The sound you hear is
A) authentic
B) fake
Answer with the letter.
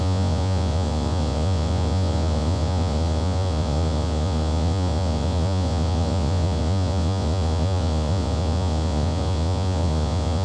B